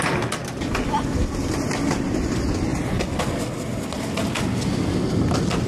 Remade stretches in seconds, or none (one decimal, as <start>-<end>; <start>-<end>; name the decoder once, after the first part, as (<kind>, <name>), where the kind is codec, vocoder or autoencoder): none